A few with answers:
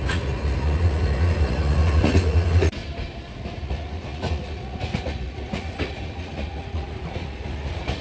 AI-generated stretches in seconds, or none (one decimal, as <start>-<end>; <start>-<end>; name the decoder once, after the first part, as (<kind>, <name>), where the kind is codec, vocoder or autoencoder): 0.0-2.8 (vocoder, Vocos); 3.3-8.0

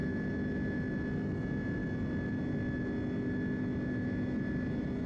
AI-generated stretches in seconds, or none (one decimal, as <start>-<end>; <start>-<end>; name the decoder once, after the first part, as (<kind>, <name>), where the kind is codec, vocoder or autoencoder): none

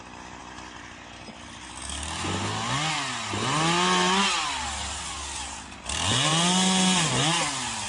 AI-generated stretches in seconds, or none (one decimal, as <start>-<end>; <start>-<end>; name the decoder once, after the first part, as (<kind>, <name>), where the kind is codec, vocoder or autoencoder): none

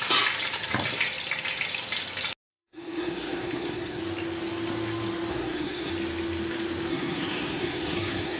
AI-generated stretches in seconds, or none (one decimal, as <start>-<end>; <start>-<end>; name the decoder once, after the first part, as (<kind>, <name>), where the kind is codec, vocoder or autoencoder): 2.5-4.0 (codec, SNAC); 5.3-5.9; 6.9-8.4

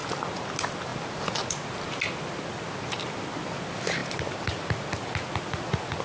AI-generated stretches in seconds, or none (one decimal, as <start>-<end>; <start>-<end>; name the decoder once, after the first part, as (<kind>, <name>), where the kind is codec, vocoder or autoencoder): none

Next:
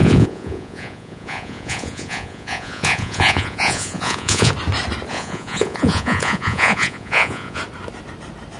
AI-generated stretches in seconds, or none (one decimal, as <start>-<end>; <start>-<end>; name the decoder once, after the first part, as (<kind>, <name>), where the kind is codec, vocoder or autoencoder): 0.0-4.5 (vocoder, Vocos); 5.1-7.6

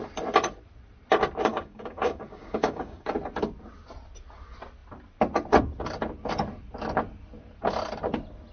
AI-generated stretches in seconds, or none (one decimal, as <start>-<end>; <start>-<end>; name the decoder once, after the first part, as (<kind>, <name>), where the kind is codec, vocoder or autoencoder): 1.5-3.1 (codec, DAC)

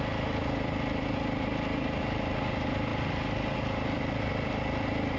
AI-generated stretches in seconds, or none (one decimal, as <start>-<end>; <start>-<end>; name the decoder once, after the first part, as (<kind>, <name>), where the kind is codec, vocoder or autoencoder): none